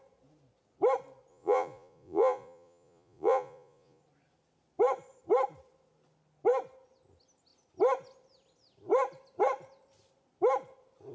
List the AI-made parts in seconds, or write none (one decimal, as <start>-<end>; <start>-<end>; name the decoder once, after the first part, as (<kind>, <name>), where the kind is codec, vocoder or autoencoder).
1.3-4.0 (vocoder, Vocos)